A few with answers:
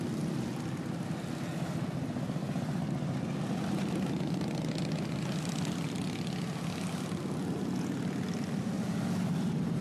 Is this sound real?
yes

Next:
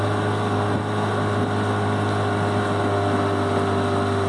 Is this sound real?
yes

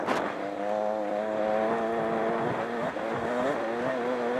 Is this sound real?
yes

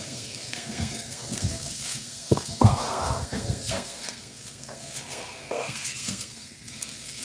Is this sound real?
no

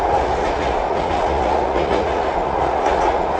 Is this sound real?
no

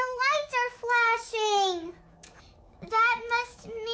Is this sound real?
no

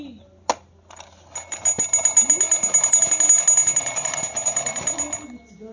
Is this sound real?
yes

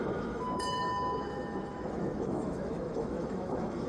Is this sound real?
no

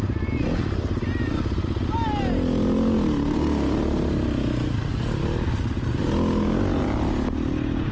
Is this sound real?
yes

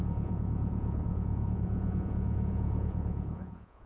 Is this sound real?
no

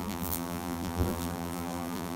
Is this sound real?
no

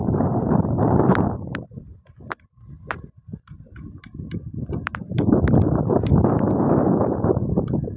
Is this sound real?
no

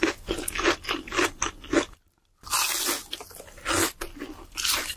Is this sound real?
yes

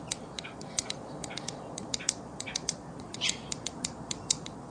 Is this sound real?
no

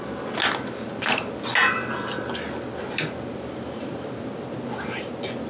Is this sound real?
yes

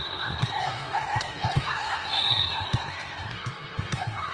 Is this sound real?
no